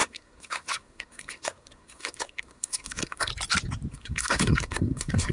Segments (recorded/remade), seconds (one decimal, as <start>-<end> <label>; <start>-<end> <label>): 0.0-3.3 remade; 3.3-3.9 recorded; 3.9-5.3 remade